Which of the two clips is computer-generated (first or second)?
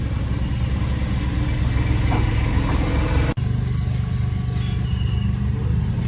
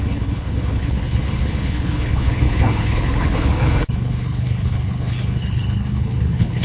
second